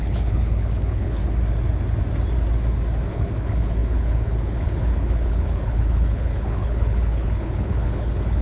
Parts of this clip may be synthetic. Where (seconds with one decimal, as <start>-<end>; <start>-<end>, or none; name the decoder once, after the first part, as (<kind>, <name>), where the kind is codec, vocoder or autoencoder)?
0.0-1.2 (codec, HILCodec); 3.1-8.4